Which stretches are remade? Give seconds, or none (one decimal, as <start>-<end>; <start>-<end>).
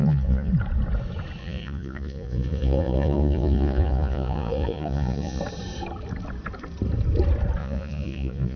0.0-0.5; 1.4-5.4; 7.6-8.6